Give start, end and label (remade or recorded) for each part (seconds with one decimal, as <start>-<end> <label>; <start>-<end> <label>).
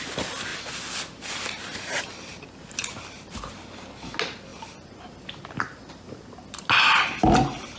0.0-7.8 recorded